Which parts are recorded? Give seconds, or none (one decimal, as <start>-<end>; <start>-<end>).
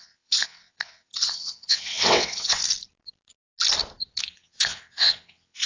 2.6-4.2